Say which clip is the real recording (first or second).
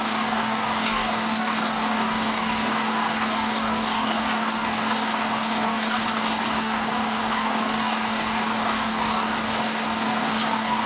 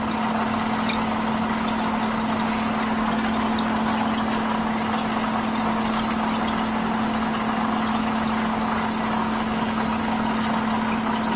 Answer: second